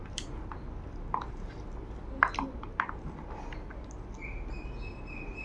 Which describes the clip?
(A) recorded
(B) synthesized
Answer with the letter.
A